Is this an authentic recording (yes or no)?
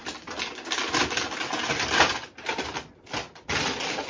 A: yes